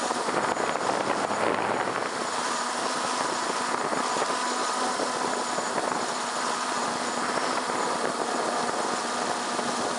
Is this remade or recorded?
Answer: recorded